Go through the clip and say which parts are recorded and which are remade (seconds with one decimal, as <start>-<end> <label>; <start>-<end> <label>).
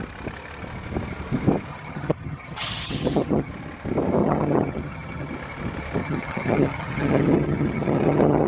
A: 0.0-1.7 recorded; 1.7-3.5 remade; 3.5-4.2 recorded; 4.2-5.3 remade; 5.3-6.0 recorded; 6.0-8.5 remade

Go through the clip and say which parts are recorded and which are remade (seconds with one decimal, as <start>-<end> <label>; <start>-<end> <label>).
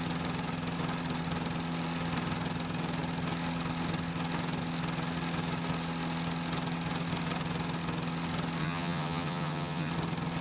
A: 0.0-8.6 recorded; 8.6-9.9 remade; 9.9-10.4 recorded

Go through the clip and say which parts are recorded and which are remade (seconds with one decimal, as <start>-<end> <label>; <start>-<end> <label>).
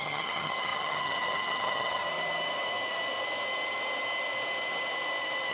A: 0.0-2.0 remade; 2.0-5.5 recorded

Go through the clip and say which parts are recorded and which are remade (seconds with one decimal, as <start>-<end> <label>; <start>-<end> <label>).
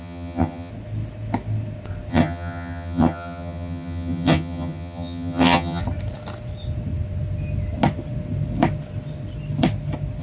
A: 0.0-0.7 remade; 0.7-2.1 recorded; 2.1-5.8 remade; 5.8-10.2 recorded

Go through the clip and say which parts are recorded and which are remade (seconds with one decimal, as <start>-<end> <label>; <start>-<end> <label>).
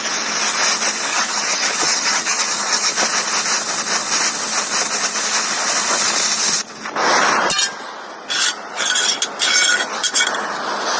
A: 0.0-1.1 recorded; 1.1-2.9 remade; 2.9-11.0 recorded